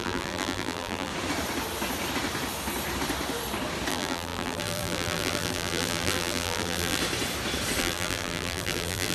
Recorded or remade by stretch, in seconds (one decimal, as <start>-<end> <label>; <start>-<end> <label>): 0.0-1.1 remade; 1.1-3.9 recorded; 3.9-7.0 remade; 7.0-7.8 recorded; 7.8-9.1 remade